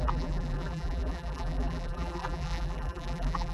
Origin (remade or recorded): remade